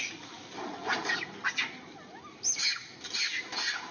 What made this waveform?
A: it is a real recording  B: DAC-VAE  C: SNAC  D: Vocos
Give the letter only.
A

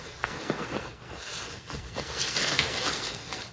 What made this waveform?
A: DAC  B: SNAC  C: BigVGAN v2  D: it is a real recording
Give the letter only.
B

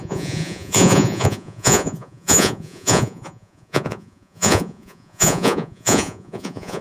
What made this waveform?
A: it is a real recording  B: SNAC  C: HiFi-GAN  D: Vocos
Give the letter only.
D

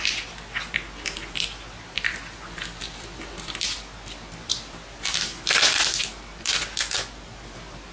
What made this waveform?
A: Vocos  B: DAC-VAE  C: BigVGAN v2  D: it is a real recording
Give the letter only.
D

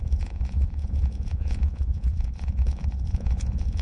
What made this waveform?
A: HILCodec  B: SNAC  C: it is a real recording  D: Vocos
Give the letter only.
D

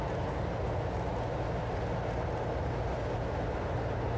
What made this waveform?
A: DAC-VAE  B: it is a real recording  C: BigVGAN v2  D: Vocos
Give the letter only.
B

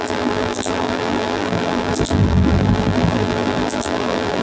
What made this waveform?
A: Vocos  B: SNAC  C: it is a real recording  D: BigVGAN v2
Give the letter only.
D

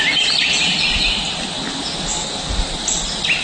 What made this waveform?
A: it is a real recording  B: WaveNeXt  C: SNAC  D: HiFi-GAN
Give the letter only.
A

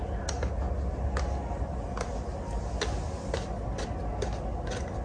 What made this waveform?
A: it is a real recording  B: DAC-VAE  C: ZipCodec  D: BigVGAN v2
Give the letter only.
A